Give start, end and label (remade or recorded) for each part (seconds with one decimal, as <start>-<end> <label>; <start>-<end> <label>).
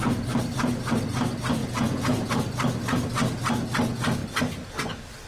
0.0-1.6 recorded; 1.6-2.3 remade; 2.3-5.3 recorded